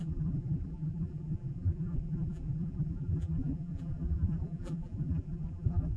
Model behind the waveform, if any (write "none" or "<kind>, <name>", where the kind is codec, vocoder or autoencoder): vocoder, BigVGAN v2